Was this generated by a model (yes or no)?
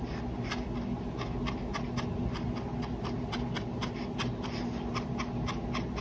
no